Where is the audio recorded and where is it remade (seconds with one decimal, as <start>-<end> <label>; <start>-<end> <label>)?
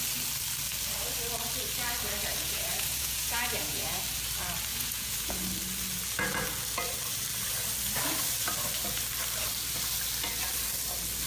0.0-2.3 recorded; 2.3-4.0 remade; 4.0-4.7 recorded; 4.7-5.3 remade; 5.3-11.3 recorded